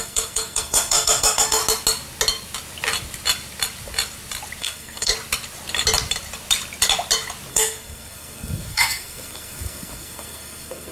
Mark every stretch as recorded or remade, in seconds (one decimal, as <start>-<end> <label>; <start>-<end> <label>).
0.0-1.6 remade; 1.6-4.6 recorded; 4.6-5.1 remade; 5.1-7.5 recorded; 7.5-10.9 remade